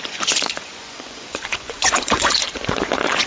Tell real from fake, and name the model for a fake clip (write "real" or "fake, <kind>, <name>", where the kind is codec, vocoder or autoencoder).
fake, vocoder, Vocos